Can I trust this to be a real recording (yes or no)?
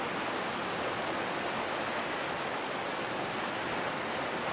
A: yes